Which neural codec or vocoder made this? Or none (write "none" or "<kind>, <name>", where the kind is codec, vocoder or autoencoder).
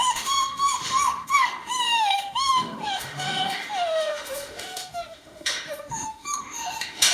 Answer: autoencoder, DAC-VAE